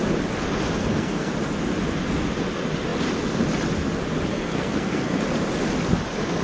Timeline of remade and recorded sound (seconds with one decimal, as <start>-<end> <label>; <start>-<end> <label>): 0.0-0.8 recorded; 0.8-1.3 remade; 1.3-4.3 recorded; 4.3-5.2 remade; 5.2-6.4 recorded